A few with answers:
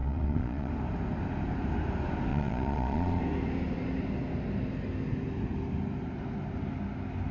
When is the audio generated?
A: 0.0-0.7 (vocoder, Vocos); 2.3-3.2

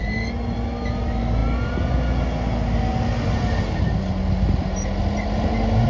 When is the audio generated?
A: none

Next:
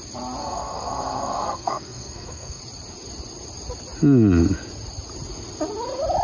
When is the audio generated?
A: 0.4-2.6 (codec, SNAC)